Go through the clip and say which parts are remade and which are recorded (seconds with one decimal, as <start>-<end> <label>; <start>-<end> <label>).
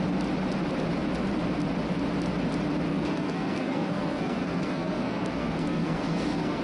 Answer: 0.0-2.9 recorded; 2.9-6.6 remade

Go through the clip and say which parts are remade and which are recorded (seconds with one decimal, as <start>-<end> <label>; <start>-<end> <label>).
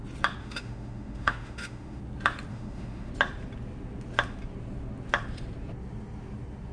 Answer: 0.0-0.4 recorded; 0.4-2.0 remade; 2.0-2.5 recorded; 2.5-3.1 remade; 3.1-6.7 recorded